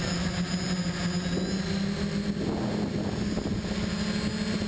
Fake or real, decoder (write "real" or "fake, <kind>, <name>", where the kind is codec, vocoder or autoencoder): real